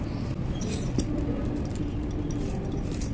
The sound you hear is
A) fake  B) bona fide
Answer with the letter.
B